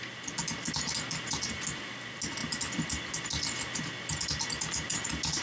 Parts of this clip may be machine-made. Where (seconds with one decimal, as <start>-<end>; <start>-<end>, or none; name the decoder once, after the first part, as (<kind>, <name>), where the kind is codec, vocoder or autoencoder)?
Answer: none